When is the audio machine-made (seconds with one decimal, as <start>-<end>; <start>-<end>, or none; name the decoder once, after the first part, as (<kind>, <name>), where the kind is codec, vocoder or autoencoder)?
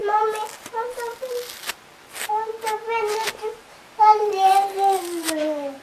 3.2-5.8 (vocoder, BigVGAN v2)